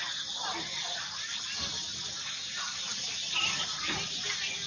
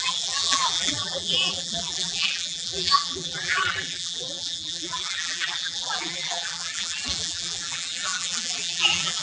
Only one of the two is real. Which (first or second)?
first